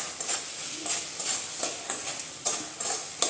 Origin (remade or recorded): recorded